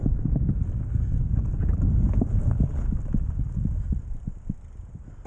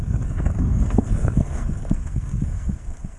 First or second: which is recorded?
first